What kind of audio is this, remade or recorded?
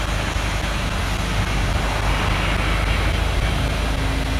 recorded